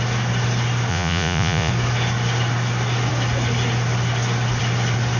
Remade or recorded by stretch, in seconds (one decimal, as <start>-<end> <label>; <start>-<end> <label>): 0.0-0.9 recorded; 0.9-1.7 remade; 1.7-5.2 recorded